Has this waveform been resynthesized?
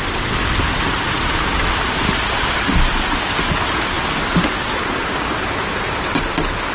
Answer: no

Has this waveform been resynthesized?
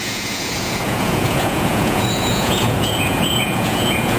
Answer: yes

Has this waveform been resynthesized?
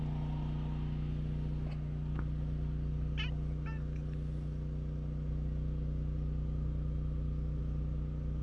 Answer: no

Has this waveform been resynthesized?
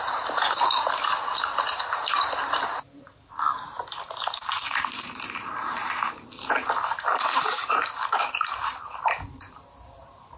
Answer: yes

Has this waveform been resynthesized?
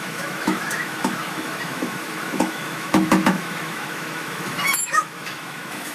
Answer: yes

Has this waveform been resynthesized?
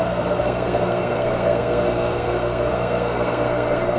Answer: yes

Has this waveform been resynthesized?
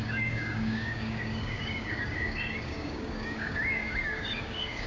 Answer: yes